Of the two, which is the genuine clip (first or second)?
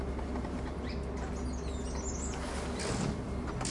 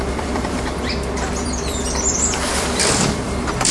first